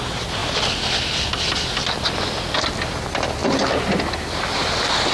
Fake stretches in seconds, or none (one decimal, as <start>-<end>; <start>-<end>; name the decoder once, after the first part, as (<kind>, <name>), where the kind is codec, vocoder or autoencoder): none